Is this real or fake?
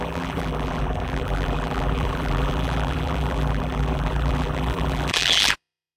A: fake